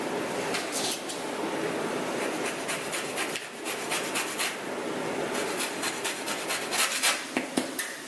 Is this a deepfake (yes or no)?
no